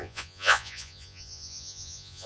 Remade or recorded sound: remade